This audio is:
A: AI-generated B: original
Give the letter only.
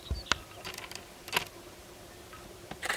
B